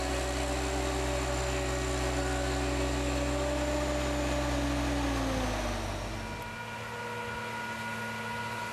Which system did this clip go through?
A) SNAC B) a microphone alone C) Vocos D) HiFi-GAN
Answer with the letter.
B